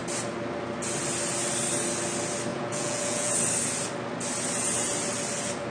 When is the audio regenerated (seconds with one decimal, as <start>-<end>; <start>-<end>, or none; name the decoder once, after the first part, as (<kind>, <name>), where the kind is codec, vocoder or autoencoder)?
2.5-3.3 (vocoder, Vocos)